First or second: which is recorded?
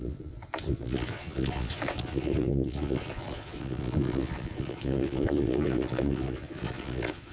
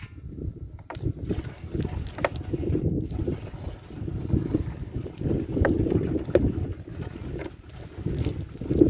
second